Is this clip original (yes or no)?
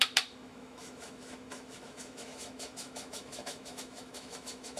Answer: no